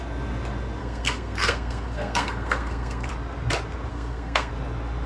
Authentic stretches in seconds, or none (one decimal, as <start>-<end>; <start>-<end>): 0.0-0.8; 3.1-3.9; 4.5-5.1